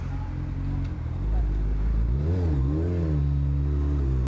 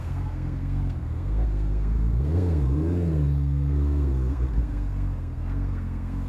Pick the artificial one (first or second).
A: second